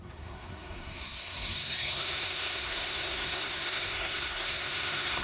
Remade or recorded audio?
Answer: remade